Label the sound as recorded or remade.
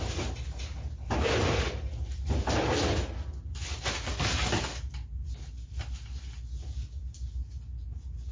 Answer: recorded